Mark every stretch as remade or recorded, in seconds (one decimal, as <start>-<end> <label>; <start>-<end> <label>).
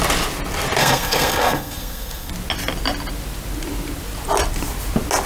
0.0-0.8 recorded; 0.8-2.3 remade; 2.3-5.3 recorded